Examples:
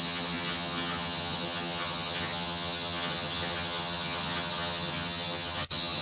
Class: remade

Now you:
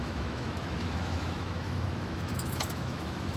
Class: remade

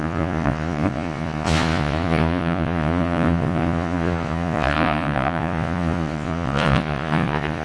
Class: remade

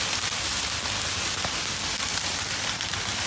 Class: recorded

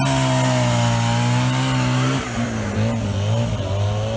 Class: recorded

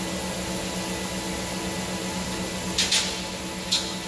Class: recorded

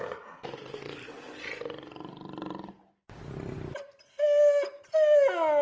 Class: recorded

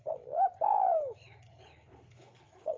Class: remade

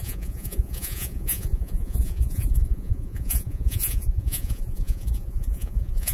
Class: remade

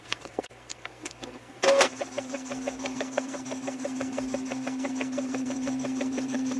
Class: remade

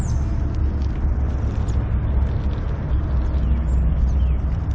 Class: recorded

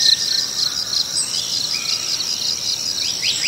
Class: recorded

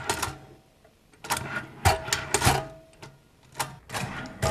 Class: recorded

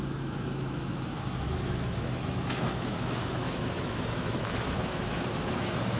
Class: remade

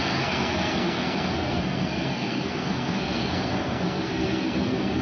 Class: remade